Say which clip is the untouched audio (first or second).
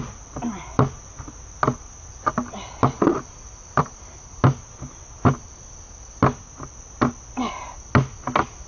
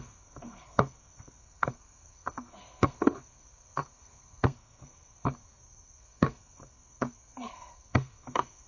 first